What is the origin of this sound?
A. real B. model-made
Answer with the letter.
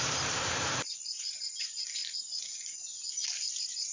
B